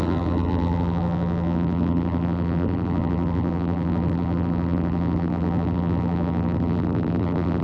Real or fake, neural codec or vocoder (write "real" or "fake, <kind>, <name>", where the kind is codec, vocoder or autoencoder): fake, vocoder, BigVGAN v2